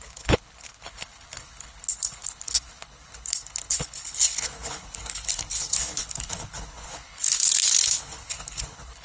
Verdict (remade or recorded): remade